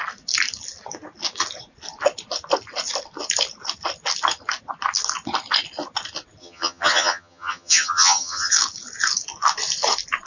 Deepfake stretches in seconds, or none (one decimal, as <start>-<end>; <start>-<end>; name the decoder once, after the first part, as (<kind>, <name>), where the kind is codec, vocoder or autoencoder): 6.4-8.5 (vocoder, HiFi-GAN)